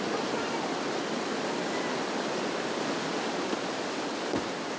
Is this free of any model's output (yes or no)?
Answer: yes